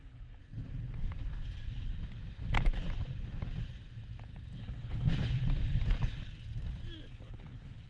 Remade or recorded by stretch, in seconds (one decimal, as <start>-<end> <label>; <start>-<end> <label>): 0.0-0.4 remade; 0.4-4.6 recorded; 4.6-5.1 remade; 5.1-7.1 recorded; 7.1-7.9 remade